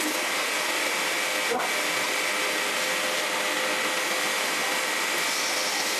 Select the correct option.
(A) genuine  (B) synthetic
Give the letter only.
A